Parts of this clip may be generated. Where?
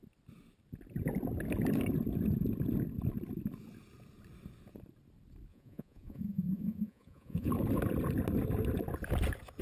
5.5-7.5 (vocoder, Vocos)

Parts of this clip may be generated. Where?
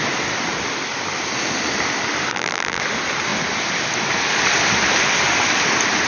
2.3-2.8 (vocoder, BigVGAN v2)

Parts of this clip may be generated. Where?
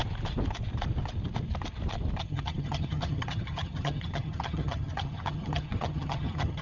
2.2-6.6 (vocoder, HiFi-GAN)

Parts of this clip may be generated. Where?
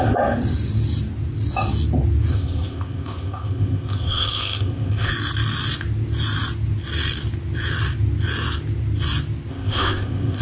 2.3-5.1 (codec, ZipCodec); 9.5-10.4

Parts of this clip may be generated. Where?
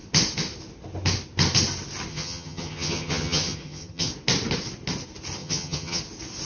2.1-4.1 (vocoder, HiFi-GAN); 5.4-6.0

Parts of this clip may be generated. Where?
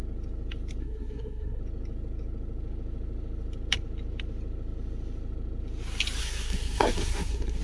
0.8-1.6 (codec, SNAC); 6.2-7.6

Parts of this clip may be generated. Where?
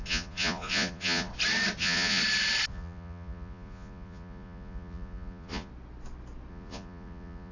0.0-1.3 (vocoder, Vocos); 1.8-2.2; 2.7-5.7; 6.5-7.5